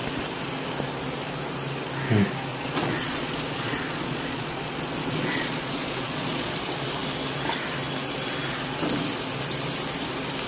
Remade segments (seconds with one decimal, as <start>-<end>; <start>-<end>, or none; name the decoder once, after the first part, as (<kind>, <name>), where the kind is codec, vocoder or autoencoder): 2.5-6.5 (vocoder, Vocos)